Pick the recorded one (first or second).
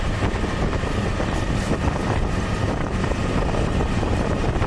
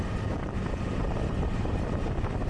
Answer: first